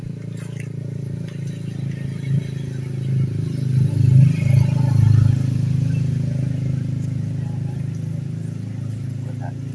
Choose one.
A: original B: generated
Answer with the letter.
A